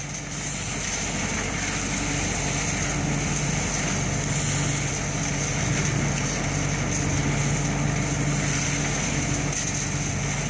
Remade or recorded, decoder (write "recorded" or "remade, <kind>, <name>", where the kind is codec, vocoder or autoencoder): recorded